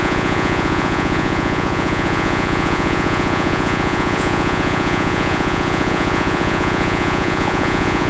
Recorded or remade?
remade